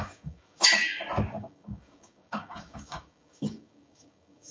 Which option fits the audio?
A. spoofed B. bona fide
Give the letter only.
A